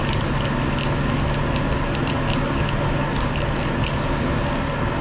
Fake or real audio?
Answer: real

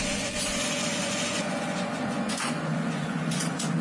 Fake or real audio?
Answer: fake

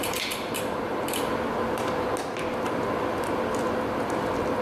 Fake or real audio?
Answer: real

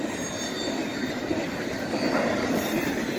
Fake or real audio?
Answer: real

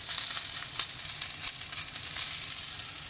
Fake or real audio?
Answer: real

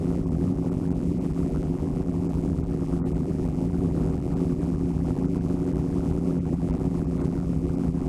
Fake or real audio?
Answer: fake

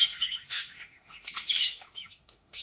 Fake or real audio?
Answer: fake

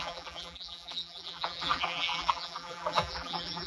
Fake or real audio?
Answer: fake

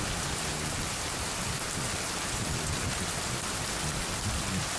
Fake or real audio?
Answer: real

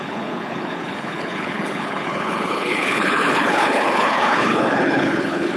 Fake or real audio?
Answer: fake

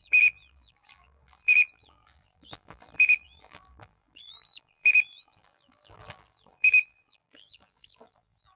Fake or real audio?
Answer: fake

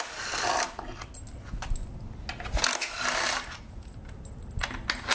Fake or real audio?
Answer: real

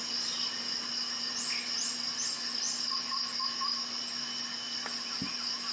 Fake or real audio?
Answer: real